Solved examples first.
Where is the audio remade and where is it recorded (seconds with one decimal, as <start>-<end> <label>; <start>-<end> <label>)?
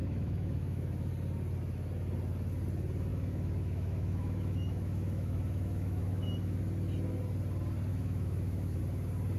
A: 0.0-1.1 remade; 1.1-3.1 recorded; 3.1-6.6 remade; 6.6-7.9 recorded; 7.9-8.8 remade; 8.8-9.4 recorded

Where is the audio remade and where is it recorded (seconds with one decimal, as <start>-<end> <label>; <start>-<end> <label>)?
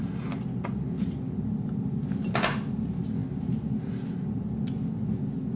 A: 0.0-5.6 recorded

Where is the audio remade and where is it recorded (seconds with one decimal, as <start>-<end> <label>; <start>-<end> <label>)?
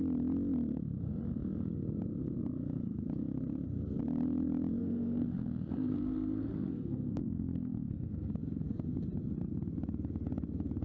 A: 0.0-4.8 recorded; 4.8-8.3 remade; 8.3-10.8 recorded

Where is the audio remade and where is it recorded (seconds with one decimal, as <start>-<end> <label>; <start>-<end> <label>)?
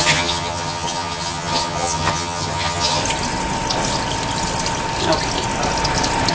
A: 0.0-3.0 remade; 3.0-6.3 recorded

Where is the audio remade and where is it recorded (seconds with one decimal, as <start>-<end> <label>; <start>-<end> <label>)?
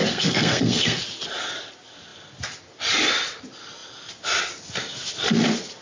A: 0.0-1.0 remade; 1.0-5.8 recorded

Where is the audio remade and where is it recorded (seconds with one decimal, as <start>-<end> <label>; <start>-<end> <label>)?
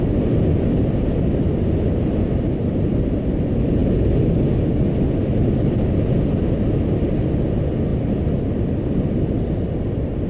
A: 0.0-10.3 recorded